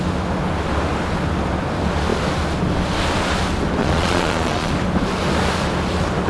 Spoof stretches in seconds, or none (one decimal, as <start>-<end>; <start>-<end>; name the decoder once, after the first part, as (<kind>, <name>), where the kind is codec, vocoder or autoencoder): 3.8-4.7 (vocoder, Vocos)